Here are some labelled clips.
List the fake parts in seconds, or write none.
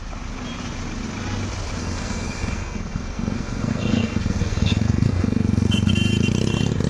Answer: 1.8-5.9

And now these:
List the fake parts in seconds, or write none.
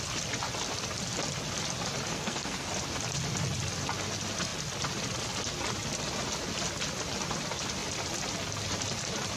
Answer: 2.1-2.7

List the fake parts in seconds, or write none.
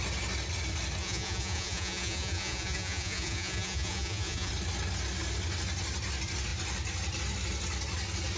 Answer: 1.0-4.5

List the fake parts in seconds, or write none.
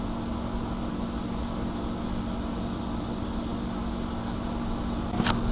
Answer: none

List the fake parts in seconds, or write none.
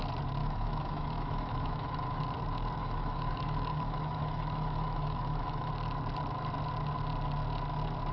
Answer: 0.4-2.2; 2.8-5.7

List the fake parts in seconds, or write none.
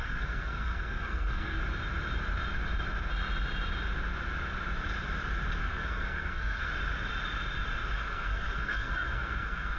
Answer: 0.0-1.6; 5.6-6.7; 7.9-9.8